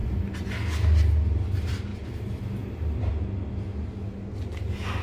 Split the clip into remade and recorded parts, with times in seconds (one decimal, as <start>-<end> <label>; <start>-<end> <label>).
0.0-1.9 recorded; 1.9-3.1 remade; 3.1-5.0 recorded